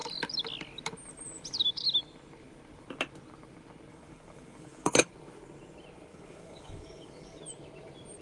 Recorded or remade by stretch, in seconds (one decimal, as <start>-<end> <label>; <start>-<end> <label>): 0.0-3.9 recorded; 3.9-5.1 remade; 5.1-6.1 recorded; 6.1-7.4 remade; 7.4-8.2 recorded